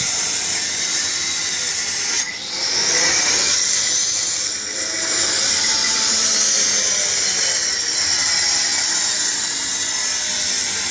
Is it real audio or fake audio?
real